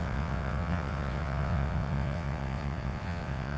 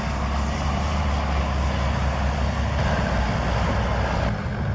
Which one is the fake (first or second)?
first